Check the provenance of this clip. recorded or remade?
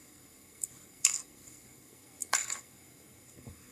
remade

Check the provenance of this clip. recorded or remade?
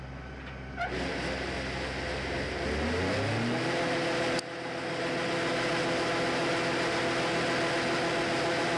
recorded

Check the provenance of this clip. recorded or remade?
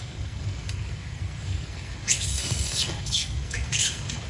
remade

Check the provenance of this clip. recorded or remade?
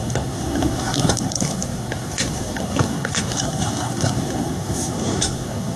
remade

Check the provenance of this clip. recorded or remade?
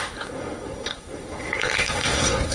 remade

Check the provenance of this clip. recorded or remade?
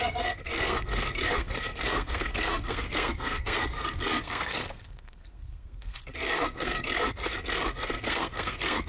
remade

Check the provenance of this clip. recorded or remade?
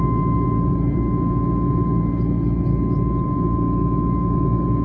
recorded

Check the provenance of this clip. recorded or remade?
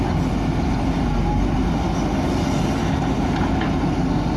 recorded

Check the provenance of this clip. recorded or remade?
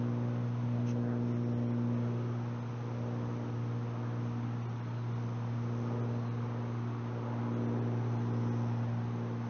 recorded